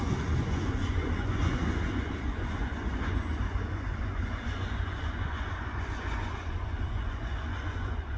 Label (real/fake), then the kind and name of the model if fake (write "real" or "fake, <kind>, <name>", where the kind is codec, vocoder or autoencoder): fake, vocoder, Vocos